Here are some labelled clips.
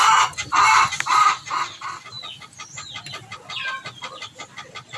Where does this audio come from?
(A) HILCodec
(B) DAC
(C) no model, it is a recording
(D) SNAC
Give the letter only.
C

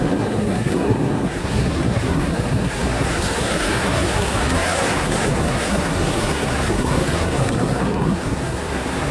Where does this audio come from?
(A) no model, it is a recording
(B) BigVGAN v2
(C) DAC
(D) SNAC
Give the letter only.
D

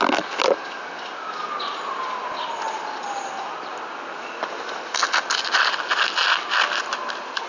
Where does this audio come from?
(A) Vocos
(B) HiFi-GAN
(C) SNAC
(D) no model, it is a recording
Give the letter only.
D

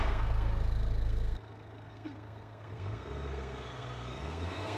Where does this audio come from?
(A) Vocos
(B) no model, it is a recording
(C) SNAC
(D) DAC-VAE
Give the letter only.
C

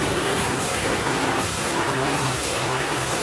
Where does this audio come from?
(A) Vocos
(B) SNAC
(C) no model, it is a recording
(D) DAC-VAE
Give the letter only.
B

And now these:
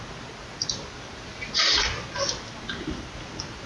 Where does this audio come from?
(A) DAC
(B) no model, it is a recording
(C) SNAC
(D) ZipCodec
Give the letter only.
B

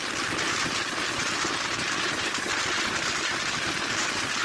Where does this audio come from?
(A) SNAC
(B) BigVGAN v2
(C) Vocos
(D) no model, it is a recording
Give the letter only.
D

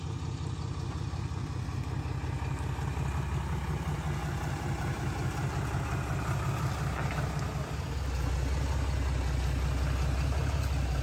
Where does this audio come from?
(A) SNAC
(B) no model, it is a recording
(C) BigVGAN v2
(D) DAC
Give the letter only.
B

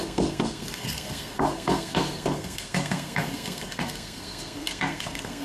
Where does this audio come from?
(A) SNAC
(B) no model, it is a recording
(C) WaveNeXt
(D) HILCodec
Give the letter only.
A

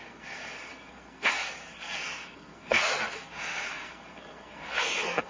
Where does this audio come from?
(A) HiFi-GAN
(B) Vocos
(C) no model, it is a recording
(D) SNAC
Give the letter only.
D